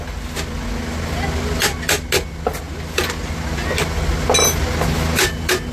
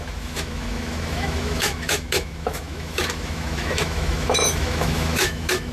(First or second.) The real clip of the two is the first